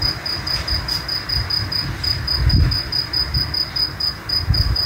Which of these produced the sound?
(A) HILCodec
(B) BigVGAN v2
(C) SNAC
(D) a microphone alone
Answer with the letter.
D